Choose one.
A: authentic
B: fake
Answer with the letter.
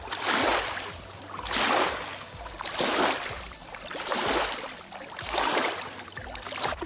B